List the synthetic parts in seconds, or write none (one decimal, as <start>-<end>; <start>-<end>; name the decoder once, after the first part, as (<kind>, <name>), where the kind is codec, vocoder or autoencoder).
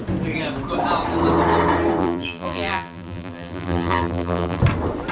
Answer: 2.0-4.6 (vocoder, BigVGAN v2)